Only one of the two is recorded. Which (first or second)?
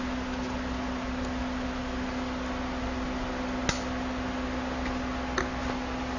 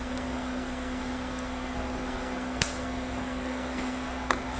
first